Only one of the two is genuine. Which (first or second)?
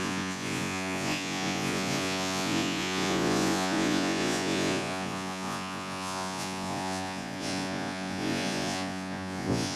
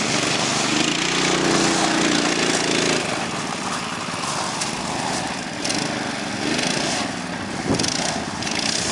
second